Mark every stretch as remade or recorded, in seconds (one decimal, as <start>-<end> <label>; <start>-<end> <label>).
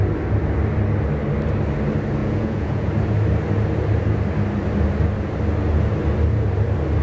0.0-2.2 recorded; 2.2-2.9 remade; 2.9-7.0 recorded